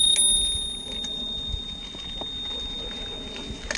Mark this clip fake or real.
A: real